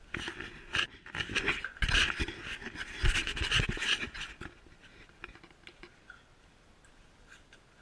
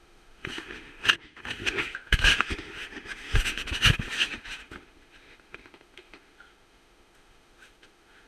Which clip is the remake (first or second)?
second